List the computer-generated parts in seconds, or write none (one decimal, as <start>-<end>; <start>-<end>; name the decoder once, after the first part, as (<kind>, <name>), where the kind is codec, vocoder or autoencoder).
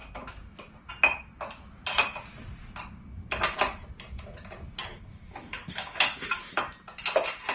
4.9-6.6 (autoencoder, DAC-VAE)